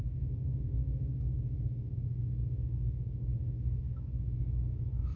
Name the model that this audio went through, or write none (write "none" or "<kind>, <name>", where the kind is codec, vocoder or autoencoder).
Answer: autoencoder, DAC-VAE